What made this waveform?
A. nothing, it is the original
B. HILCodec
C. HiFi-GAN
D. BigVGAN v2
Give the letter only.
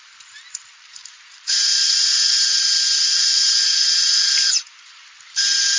D